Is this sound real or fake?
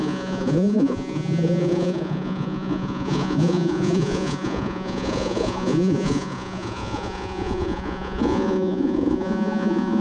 fake